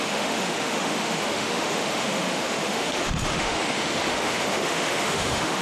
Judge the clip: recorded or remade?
remade